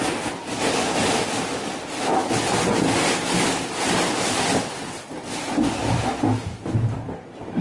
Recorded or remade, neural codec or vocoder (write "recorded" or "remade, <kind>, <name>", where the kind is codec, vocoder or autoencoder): recorded